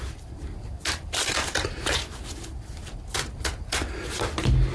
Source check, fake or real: real